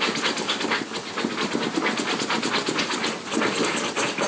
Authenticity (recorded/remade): recorded